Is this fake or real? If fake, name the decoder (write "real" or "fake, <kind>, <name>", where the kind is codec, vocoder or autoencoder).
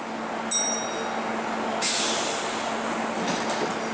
real